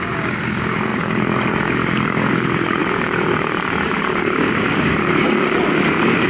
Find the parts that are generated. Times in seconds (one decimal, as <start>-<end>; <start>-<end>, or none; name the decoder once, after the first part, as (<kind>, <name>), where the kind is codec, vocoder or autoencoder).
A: 0.0-6.3 (codec, DAC)